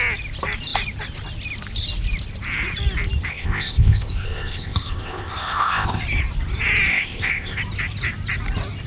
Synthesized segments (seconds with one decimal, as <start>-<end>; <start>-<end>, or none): 3.3-6.0; 6.9-7.6